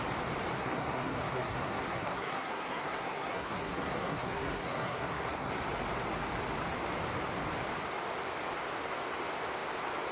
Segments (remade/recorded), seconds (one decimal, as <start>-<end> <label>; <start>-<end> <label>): 0.0-0.6 recorded; 0.6-5.5 remade; 5.5-10.1 recorded